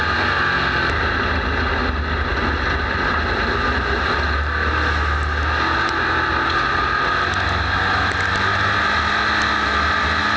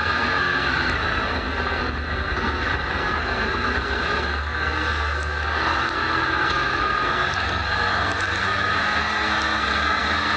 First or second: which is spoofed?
second